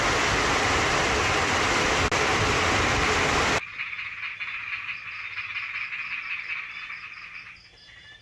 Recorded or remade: recorded